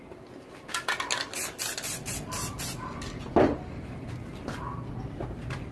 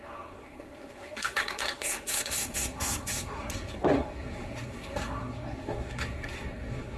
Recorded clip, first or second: first